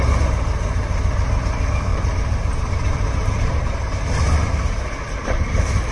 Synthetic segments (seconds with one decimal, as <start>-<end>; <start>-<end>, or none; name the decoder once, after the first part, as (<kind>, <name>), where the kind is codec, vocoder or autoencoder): 1.9-5.4 (vocoder, BigVGAN v2)